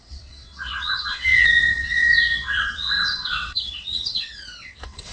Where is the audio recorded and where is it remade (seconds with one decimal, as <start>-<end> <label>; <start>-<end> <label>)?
0.0-5.1 remade